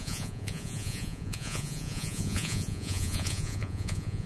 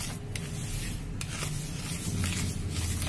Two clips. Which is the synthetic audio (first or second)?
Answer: first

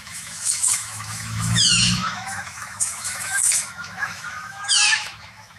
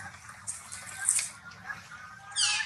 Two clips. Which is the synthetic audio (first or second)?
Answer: first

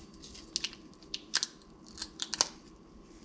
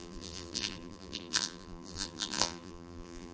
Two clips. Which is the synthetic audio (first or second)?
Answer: second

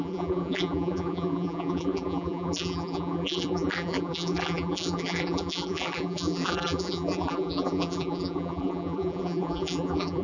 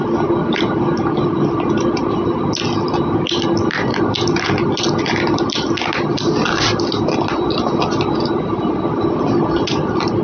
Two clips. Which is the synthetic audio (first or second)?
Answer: first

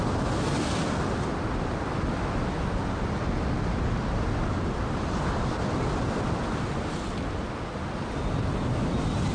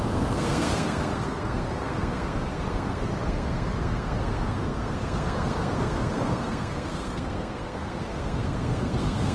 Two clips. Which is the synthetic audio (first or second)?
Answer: second